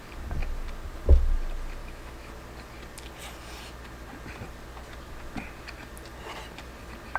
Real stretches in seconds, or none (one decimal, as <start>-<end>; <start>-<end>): 0.0-1.8; 2.3-7.2